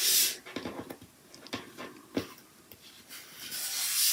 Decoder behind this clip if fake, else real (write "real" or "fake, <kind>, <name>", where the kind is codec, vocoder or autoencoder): real